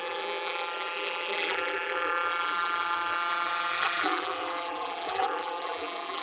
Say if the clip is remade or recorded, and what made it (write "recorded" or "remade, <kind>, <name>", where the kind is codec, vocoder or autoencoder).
remade, vocoder, BigVGAN v2